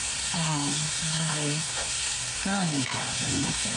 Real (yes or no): no